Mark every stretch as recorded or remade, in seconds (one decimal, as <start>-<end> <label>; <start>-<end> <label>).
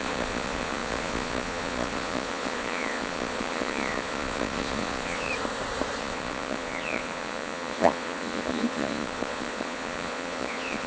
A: 0.0-5.3 remade; 5.3-6.0 recorded; 6.0-10.9 remade